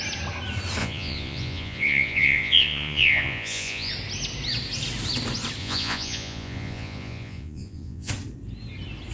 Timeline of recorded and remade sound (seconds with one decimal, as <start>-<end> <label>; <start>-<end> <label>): 0.0-0.8 recorded; 0.8-3.9 remade; 3.9-5.6 recorded; 5.6-8.1 remade; 8.1-9.1 recorded